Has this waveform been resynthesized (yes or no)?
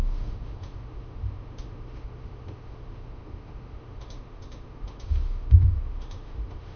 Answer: yes